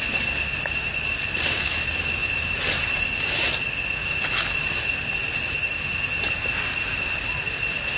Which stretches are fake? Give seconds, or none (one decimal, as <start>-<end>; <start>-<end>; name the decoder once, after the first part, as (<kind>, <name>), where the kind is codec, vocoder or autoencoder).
none